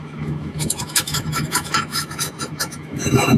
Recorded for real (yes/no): no